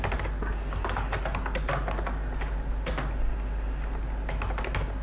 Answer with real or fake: real